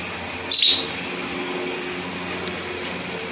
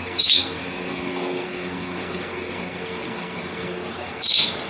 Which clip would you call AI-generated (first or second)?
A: second